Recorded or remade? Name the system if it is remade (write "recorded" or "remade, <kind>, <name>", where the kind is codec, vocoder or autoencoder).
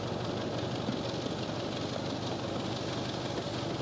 recorded